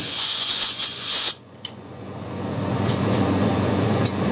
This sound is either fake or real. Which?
fake